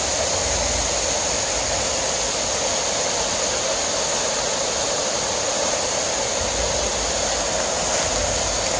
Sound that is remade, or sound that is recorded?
recorded